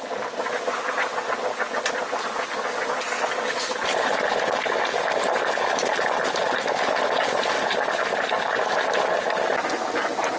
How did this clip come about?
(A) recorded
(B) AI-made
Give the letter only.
A